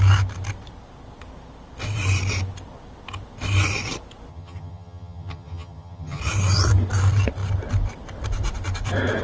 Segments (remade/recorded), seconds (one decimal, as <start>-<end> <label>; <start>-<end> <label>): 0.0-4.3 recorded; 4.3-6.2 remade; 6.2-9.2 recorded